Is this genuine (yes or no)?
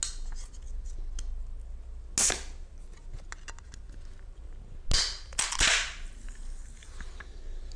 yes